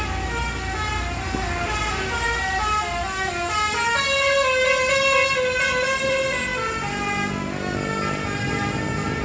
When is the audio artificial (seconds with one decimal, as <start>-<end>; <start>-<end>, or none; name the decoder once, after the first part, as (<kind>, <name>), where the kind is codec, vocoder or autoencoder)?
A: none